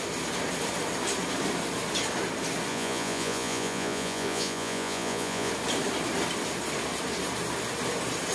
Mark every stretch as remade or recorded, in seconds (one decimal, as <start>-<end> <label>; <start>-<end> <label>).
0.0-2.7 recorded; 2.7-5.5 remade; 5.5-8.3 recorded